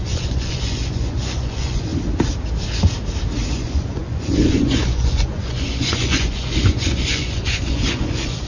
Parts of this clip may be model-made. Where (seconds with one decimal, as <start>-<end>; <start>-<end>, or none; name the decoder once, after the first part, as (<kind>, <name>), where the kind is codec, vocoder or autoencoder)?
0.0-1.9 (vocoder, Vocos); 3.5-8.5